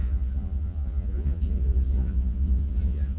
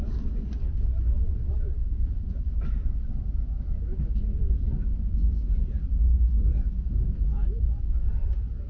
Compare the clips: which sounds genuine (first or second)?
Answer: second